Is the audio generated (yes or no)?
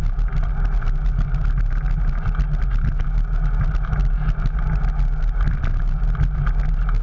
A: no